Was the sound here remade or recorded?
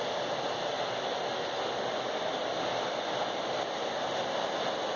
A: recorded